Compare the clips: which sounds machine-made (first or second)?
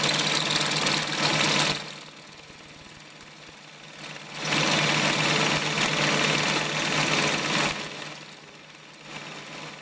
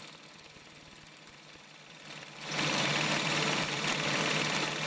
second